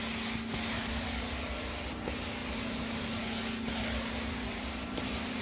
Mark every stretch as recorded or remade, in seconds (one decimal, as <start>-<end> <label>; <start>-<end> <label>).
0.0-5.4 recorded